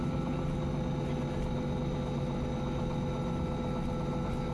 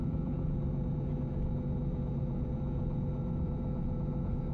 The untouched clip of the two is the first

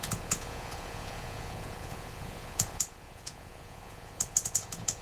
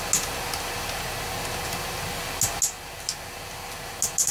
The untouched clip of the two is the second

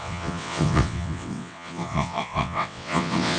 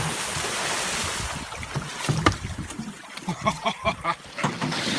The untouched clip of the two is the second